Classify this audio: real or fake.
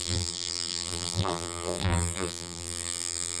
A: fake